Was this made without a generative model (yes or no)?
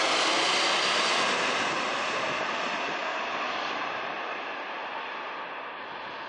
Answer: yes